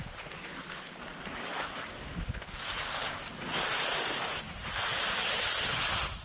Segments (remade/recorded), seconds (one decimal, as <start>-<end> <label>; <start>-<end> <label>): 0.0-6.2 recorded